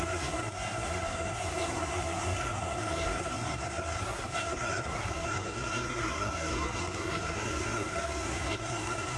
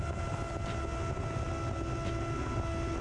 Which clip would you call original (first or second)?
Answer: second